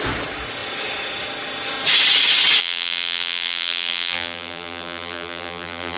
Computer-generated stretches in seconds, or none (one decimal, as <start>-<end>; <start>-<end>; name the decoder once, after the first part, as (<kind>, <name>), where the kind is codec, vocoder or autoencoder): 2.6-6.0 (vocoder, BigVGAN v2)